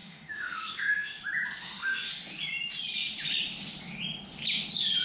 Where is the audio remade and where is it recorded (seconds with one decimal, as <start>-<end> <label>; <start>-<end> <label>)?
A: 0.0-1.2 remade; 1.2-1.6 recorded; 1.6-2.1 remade; 2.1-5.0 recorded

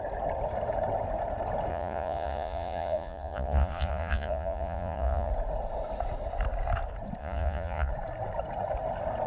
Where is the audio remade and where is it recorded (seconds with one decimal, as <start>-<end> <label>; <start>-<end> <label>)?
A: 0.0-1.7 recorded; 1.7-5.3 remade; 5.3-7.2 recorded; 7.2-7.9 remade; 7.9-9.3 recorded